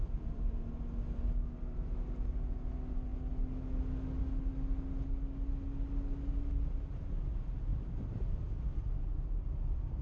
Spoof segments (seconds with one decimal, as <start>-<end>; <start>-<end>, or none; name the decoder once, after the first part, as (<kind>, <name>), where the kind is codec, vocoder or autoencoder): none